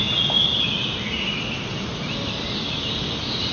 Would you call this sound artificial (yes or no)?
no